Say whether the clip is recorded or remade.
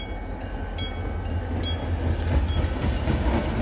recorded